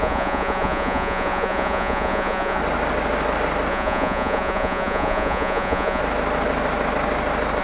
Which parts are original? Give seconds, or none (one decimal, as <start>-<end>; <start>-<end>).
2.6-3.7; 6.0-7.6